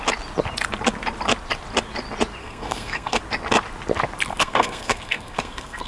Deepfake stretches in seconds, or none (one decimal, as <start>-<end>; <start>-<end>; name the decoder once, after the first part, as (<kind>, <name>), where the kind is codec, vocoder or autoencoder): 2.4-3.2 (codec, SNAC); 4.3-5.9